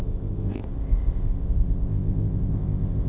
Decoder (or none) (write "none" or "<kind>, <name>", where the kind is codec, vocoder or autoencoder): codec, ZipCodec